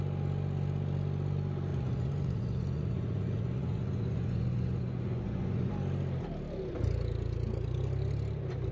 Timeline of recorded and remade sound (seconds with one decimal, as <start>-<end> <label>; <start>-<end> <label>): 0.0-1.7 recorded; 1.7-5.7 remade; 5.7-8.7 recorded